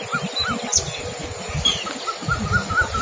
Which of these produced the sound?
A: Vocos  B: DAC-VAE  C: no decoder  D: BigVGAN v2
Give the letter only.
C